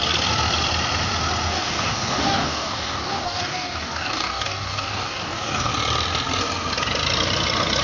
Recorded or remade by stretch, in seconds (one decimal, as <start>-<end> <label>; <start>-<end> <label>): 0.0-1.5 recorded; 1.5-5.7 remade; 5.7-7.8 recorded